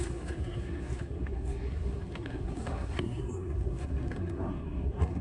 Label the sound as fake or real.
fake